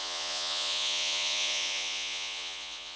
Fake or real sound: fake